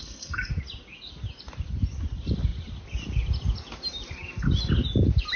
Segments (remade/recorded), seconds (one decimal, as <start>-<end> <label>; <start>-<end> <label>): 0.0-0.6 remade; 0.6-5.4 recorded